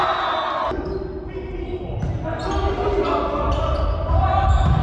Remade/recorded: recorded